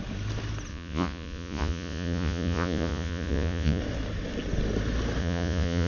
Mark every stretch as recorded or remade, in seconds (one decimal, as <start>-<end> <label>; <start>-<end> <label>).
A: 0.0-0.7 recorded; 0.7-3.8 remade; 3.8-5.2 recorded; 5.2-5.9 remade